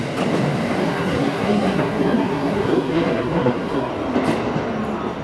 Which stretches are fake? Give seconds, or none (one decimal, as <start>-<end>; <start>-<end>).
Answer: 0.8-3.9